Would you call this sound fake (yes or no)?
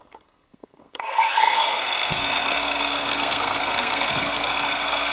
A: yes